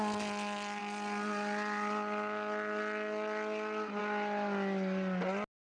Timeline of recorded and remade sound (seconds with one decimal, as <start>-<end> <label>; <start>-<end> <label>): 0.0-5.7 recorded